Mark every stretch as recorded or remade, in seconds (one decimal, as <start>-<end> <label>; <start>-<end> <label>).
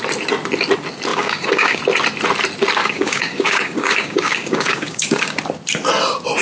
0.0-1.1 recorded; 1.1-1.8 remade; 1.8-2.8 recorded; 2.8-5.4 remade; 5.4-6.4 recorded